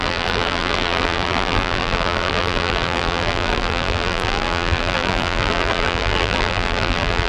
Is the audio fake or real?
fake